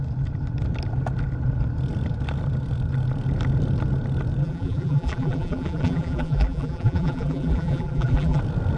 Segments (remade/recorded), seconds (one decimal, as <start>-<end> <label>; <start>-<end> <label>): 0.0-4.4 recorded; 4.4-8.4 remade; 8.4-8.8 recorded